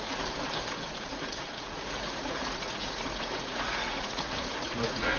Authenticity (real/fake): fake